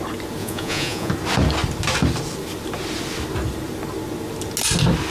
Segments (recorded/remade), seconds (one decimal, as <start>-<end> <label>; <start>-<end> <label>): 0.0-0.4 recorded; 0.4-1.1 remade; 1.1-5.1 recorded